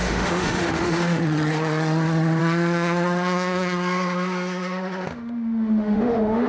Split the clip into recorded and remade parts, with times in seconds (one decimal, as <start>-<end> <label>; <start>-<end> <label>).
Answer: 0.0-1.2 remade; 1.2-2.4 recorded; 2.4-6.5 remade